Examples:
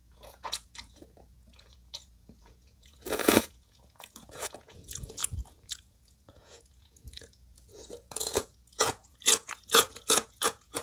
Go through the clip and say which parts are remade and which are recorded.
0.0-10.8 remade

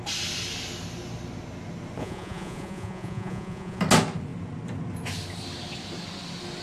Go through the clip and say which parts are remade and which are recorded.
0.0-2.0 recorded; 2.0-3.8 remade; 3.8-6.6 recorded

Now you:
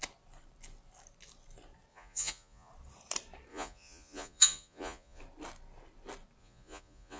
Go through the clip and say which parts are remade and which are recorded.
0.0-1.9 recorded; 1.9-2.7 remade; 2.7-3.5 recorded; 3.5-5.2 remade; 5.2-6.4 recorded; 6.4-7.2 remade

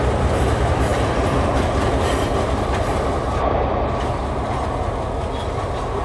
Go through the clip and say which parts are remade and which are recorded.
0.0-6.0 recorded

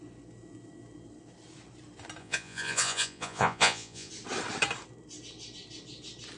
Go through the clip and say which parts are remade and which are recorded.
0.0-2.2 recorded; 2.2-4.1 remade; 4.1-6.4 recorded

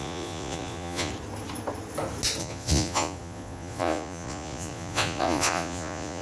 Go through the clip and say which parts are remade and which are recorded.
0.0-1.1 remade; 1.1-2.4 recorded; 2.4-6.2 remade